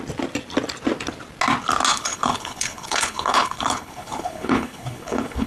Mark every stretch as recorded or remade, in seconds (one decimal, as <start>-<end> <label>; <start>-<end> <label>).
0.0-1.9 recorded; 1.9-5.5 remade